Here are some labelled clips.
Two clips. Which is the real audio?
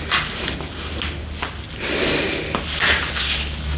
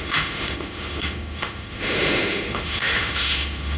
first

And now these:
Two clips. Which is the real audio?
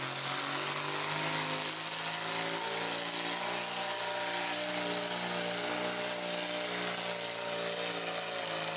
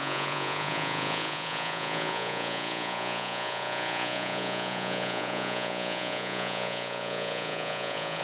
first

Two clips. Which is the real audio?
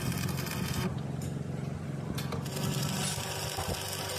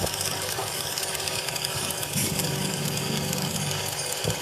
first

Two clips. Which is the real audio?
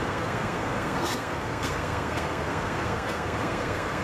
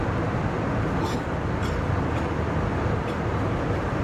second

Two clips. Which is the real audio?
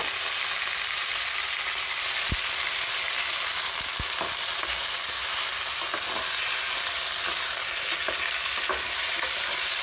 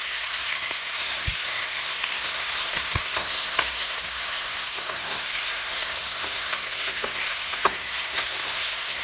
first